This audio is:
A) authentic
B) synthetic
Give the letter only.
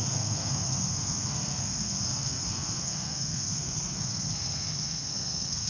B